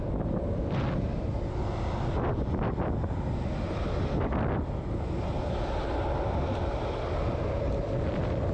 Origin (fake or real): real